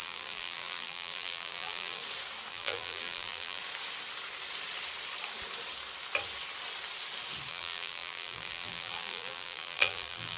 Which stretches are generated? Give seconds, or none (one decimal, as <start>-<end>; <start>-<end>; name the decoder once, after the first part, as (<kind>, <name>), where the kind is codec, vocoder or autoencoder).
0.0-2.0 (vocoder, BigVGAN v2); 2.5-3.6; 7.5-10.4